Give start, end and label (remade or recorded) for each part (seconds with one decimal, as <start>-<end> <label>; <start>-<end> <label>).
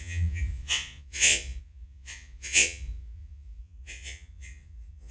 0.0-5.1 remade